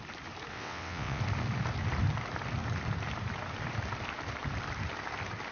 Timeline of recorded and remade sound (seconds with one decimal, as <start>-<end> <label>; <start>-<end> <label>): 0.0-0.5 recorded; 0.5-1.2 remade; 1.2-5.5 recorded